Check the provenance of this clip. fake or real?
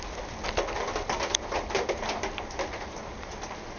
real